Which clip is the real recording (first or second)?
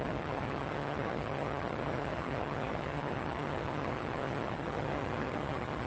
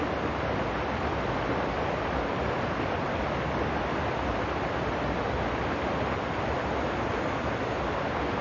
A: second